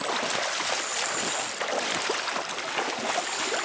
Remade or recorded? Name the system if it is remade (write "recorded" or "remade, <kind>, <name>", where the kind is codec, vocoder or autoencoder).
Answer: recorded